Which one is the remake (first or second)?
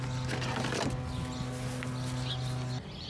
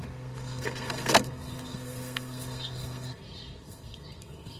second